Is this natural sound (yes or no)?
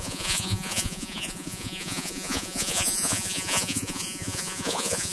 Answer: no